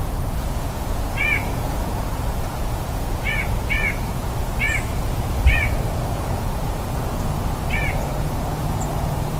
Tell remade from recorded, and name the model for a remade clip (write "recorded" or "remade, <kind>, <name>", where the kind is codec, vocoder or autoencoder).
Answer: remade, vocoder, Vocos